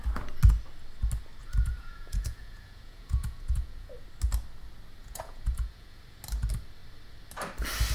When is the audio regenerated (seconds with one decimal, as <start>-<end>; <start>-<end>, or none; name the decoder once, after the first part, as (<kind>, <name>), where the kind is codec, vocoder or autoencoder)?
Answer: 1.4-3.9 (vocoder, Vocos); 5.0-6.0